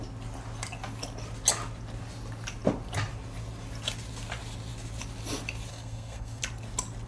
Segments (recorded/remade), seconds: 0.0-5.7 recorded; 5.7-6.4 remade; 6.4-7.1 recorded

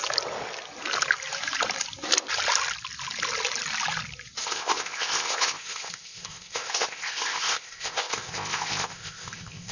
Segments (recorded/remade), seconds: 0.0-4.4 recorded; 4.4-9.7 remade

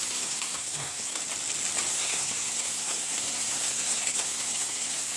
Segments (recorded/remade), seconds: 0.0-1.2 remade; 1.2-1.9 recorded; 1.9-5.2 remade

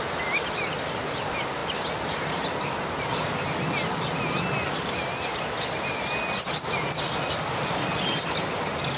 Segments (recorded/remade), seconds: 0.0-9.0 recorded